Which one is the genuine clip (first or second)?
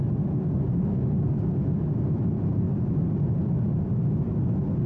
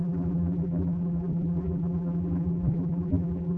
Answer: first